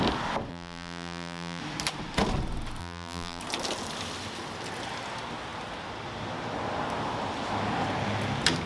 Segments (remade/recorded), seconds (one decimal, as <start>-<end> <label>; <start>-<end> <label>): 0.0-0.5 recorded; 0.5-1.6 remade; 1.6-2.8 recorded; 2.8-3.4 remade; 3.4-8.7 recorded